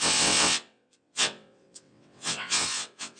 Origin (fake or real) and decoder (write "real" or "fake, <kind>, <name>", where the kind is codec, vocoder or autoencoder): fake, vocoder, WaveNeXt